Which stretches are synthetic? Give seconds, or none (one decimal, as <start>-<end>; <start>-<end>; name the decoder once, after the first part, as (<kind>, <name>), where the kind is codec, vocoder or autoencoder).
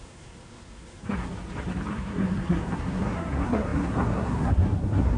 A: 0.0-1.3 (codec, SNAC); 1.9-5.2